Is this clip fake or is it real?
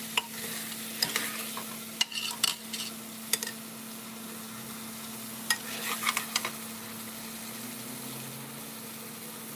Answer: real